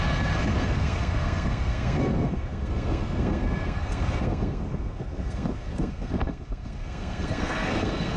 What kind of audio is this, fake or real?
fake